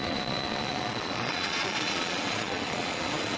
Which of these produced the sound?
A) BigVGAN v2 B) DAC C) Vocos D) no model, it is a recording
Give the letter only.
C